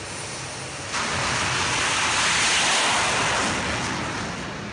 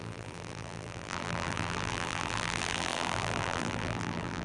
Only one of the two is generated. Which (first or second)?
second